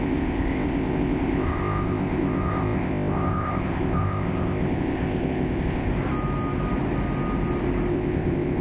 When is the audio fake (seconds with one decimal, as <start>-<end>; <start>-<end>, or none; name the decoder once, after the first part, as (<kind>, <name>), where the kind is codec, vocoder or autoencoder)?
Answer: 0.0-5.9 (codec, ZipCodec); 7.9-8.6